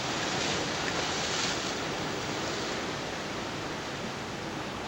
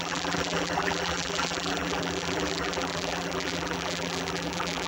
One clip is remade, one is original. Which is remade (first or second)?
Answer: second